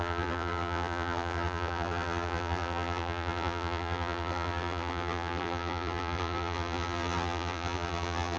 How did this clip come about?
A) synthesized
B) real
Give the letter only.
A